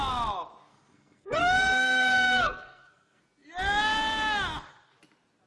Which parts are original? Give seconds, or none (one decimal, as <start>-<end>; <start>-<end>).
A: 0.0-0.7; 3.2-5.5